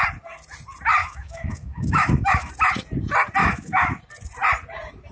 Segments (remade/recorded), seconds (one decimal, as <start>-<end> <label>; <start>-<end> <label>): 0.0-1.0 recorded; 1.0-2.5 remade; 2.5-3.4 recorded; 3.4-4.0 remade; 4.0-5.1 recorded